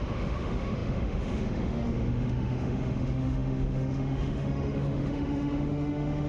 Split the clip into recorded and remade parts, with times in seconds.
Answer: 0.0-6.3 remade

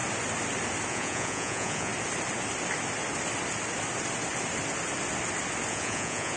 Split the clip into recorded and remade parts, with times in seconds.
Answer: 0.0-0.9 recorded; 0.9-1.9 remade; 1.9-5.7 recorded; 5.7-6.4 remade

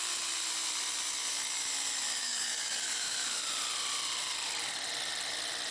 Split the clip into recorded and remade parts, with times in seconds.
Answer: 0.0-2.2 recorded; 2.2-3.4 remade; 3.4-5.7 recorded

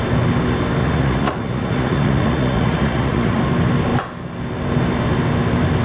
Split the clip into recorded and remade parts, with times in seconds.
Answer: 0.0-0.8 recorded; 0.8-3.4 remade; 3.4-5.8 recorded

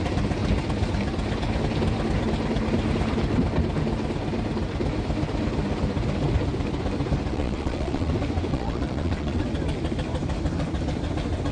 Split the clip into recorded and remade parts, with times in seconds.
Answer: 0.0-7.3 recorded; 7.3-8.1 remade; 8.1-8.5 recorded; 8.5-9.4 remade; 9.4-11.5 recorded

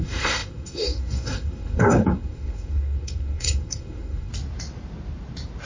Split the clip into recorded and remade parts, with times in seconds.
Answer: 0.0-4.3 remade; 4.3-5.7 recorded